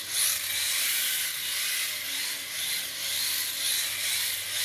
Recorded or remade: recorded